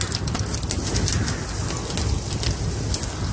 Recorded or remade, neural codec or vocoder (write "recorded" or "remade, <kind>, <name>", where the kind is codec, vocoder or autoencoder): recorded